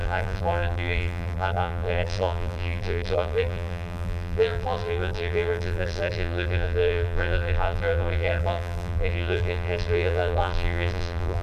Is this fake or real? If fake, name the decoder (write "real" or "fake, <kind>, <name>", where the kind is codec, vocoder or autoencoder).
fake, vocoder, BigVGAN v2